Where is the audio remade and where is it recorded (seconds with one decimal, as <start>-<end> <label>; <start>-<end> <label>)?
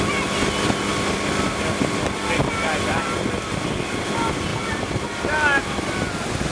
0.0-0.9 recorded; 0.9-2.4 remade; 2.4-4.5 recorded; 4.5-6.1 remade; 6.1-6.5 recorded